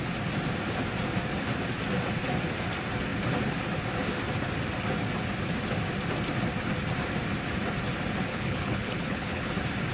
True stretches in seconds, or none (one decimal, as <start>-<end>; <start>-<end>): 0.0-8.3; 9.5-9.9